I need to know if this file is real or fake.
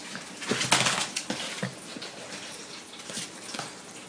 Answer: real